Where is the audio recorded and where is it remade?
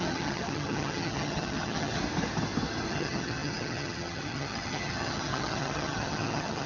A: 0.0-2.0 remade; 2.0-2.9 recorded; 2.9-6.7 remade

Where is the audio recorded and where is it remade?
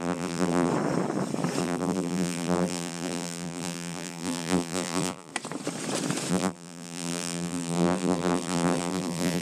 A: 0.0-0.7 remade; 0.7-1.6 recorded; 1.6-5.3 remade; 5.3-6.3 recorded; 6.3-9.4 remade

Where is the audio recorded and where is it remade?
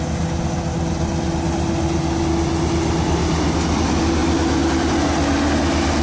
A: 0.0-6.0 recorded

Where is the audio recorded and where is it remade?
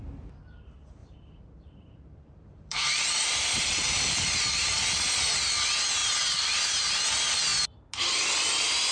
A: 0.0-1.0 recorded; 1.0-5.1 remade; 5.1-6.0 recorded; 6.0-6.9 remade; 6.9-8.9 recorded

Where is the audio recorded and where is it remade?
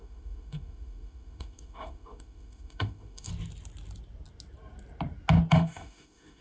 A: 0.0-3.3 remade; 3.3-5.5 recorded; 5.5-6.4 remade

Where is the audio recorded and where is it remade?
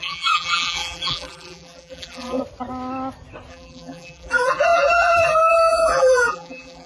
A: 0.0-2.4 remade; 2.4-3.5 recorded; 3.5-6.9 remade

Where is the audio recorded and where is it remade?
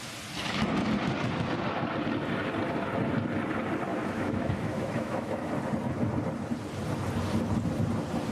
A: 0.0-3.9 recorded; 3.9-5.5 remade; 5.5-8.3 recorded